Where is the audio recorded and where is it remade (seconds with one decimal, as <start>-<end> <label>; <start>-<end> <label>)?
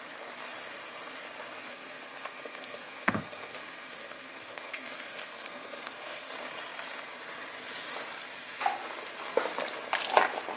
0.0-1.7 recorded; 1.7-6.3 remade; 6.3-10.6 recorded